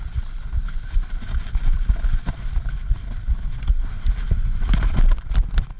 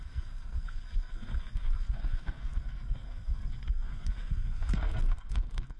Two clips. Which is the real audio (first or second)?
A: first